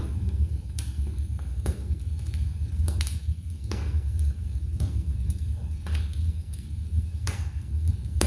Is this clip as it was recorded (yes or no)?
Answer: no